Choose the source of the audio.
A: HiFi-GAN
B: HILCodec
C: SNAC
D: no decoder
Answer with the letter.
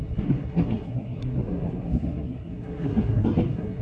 C